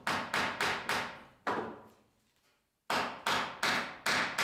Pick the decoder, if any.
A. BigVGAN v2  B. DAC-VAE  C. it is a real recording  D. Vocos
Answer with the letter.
C